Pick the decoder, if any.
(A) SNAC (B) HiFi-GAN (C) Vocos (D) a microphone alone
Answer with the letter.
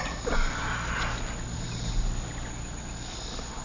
D